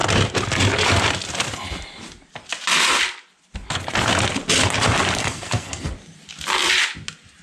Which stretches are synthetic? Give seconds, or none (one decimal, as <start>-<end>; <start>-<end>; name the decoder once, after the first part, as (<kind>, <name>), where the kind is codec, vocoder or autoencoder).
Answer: 5.2-5.9 (codec, SNAC)